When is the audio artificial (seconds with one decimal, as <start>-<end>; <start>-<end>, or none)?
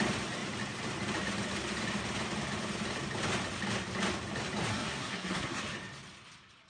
4.7-5.6